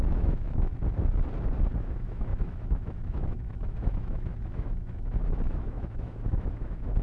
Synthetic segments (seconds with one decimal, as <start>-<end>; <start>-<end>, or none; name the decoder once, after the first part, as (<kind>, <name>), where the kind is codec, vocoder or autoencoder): 0.0-0.7 (autoencoder, DAC-VAE); 1.8-7.0